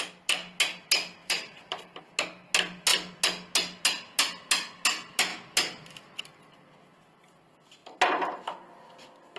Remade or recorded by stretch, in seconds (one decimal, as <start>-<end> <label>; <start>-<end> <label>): 0.0-1.2 recorded; 1.2-2.0 remade; 2.0-9.4 recorded